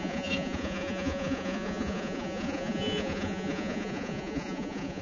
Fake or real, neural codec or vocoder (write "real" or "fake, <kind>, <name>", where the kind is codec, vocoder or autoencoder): fake, vocoder, Vocos